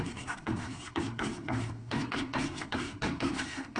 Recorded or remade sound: remade